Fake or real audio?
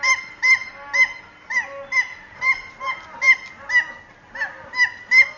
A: real